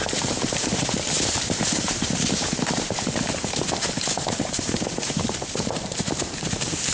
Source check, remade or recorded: remade